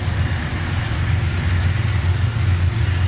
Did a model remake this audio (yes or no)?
no